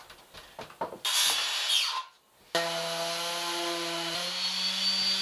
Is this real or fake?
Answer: real